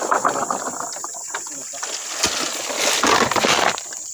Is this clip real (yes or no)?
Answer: yes